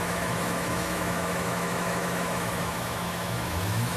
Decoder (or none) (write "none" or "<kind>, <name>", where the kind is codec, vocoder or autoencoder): autoencoder, DAC-VAE